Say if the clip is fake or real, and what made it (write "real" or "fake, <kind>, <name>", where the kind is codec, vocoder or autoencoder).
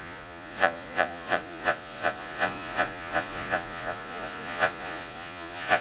fake, vocoder, Vocos